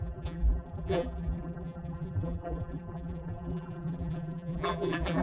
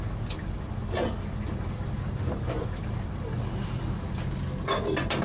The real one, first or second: second